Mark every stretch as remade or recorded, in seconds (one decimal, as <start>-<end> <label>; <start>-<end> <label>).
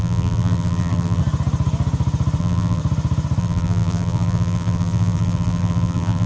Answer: 0.0-1.2 remade; 1.2-2.4 recorded; 2.4-2.8 remade; 2.8-3.4 recorded; 3.4-6.3 remade